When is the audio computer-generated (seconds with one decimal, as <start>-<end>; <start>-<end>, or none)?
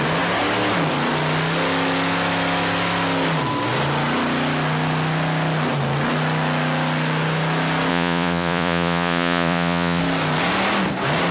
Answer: 7.9-10.0